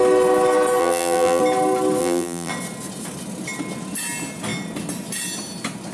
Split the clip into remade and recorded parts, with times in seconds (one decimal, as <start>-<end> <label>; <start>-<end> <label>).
0.0-0.8 recorded; 0.8-1.4 remade; 1.4-2.0 recorded; 2.0-2.5 remade; 2.5-5.9 recorded